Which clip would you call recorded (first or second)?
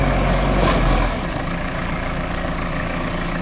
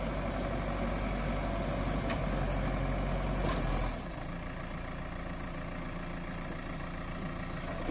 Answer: second